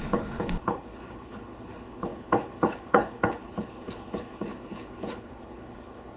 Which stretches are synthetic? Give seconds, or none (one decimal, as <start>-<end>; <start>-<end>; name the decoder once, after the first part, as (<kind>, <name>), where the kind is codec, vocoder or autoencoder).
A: 0.0-6.2 (codec, HILCodec)